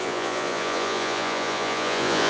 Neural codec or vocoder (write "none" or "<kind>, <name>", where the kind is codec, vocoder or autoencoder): vocoder, Vocos